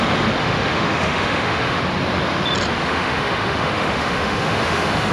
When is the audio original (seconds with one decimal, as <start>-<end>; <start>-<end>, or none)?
0.0-0.4; 1.8-2.8

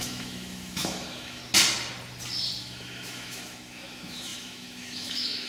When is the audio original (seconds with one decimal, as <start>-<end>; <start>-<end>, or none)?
1.4-2.6

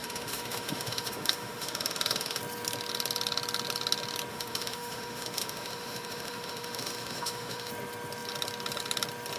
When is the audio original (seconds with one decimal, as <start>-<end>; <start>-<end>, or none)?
2.4-4.3; 7.7-9.4

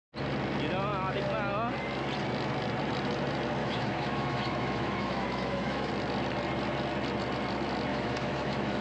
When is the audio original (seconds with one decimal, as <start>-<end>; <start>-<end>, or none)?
0.0-3.6; 5.9-7.9

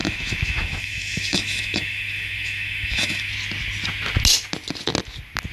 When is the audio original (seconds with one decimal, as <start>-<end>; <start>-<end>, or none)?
3.3-5.5

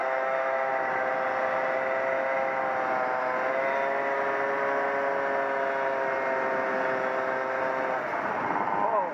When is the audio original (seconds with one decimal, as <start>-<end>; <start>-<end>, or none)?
0.7-9.1

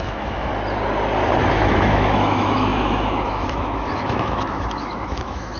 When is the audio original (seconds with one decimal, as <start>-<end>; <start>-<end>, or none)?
0.5-1.5